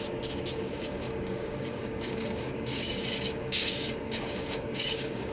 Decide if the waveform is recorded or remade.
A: remade